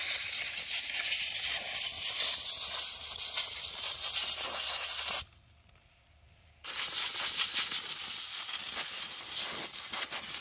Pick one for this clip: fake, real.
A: real